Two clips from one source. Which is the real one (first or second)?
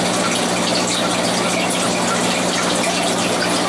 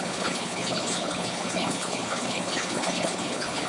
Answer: first